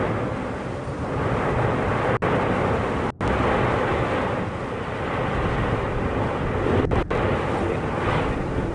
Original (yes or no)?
yes